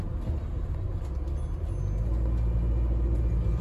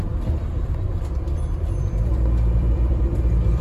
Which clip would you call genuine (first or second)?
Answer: first